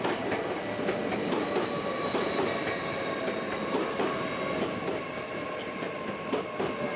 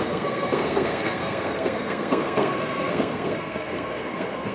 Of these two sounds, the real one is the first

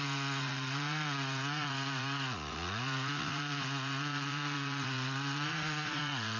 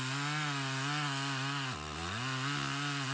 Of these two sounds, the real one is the second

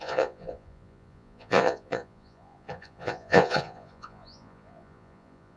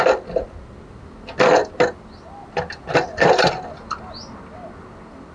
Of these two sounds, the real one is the second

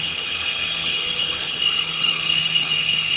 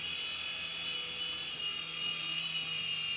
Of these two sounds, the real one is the second